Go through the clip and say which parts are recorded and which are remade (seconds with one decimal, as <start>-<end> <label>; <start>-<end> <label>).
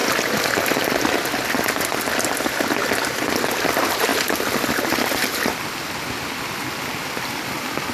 0.0-7.9 recorded